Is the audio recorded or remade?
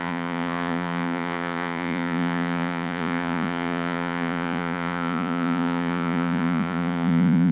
remade